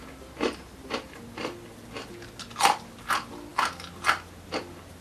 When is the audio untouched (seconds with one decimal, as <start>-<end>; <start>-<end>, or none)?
0.0-5.0